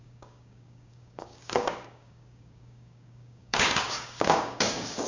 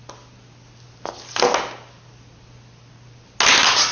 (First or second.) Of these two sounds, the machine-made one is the first